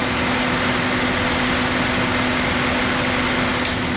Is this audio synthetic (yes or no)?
no